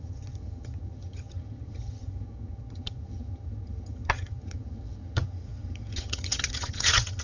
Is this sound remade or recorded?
remade